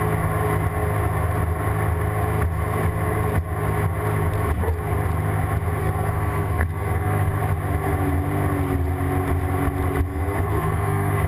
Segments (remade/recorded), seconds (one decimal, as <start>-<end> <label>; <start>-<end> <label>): 0.0-5.8 recorded; 5.8-7.4 remade; 7.4-10.1 recorded; 10.1-11.3 remade